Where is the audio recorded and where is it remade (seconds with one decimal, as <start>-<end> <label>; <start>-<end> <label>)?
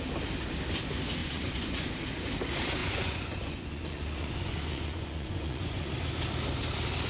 0.0-1.2 recorded; 1.2-1.9 remade; 1.9-2.8 recorded; 2.8-5.9 remade; 5.9-7.1 recorded